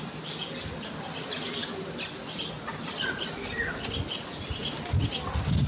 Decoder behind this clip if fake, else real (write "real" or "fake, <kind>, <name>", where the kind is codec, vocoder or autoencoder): real